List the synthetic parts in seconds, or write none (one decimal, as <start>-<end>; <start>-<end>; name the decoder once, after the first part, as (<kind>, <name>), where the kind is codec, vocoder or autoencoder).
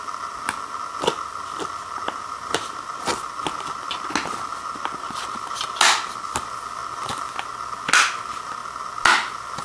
none